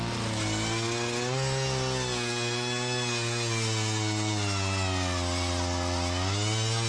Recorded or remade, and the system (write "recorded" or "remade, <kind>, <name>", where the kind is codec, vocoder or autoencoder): recorded